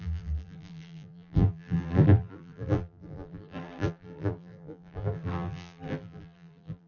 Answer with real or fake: fake